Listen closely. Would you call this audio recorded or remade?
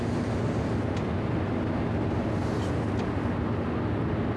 recorded